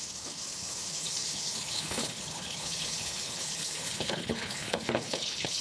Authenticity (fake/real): fake